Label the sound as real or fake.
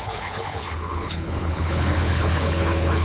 fake